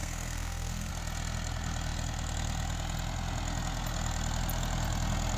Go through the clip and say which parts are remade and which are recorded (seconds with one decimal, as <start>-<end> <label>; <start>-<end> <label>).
0.0-0.9 remade; 0.9-5.4 recorded